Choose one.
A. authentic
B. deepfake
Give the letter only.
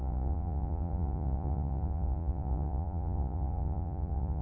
B